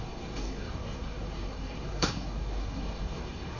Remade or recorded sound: remade